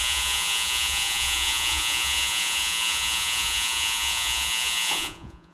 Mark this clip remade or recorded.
remade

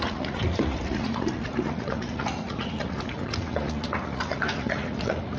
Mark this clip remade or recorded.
remade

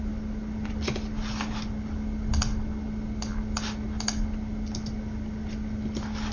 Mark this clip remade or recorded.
recorded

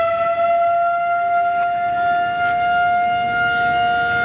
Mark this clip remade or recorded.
recorded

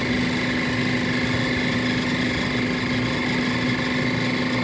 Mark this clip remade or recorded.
recorded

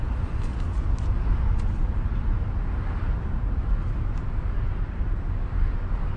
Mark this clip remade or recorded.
recorded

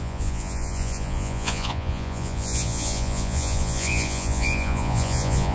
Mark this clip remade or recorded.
remade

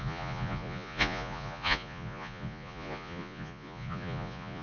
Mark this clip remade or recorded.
remade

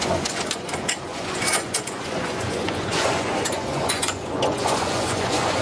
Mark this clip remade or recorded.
remade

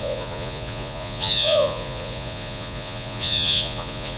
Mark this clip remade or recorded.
remade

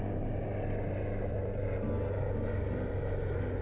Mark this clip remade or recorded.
recorded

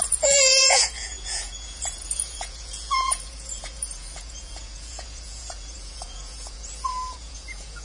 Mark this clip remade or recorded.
remade